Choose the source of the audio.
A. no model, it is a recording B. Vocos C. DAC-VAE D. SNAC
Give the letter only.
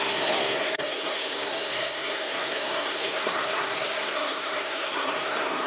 D